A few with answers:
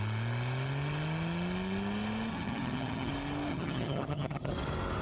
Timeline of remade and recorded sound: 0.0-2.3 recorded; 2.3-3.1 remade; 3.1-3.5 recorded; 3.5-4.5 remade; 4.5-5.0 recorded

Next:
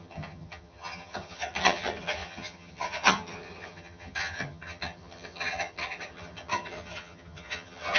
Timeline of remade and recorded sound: 0.0-8.0 remade

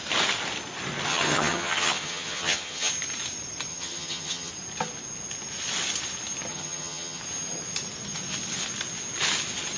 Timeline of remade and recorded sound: 0.0-1.1 recorded; 1.1-2.9 remade; 2.9-3.7 recorded; 3.7-4.5 remade; 4.5-6.5 recorded; 6.5-7.2 remade; 7.2-9.8 recorded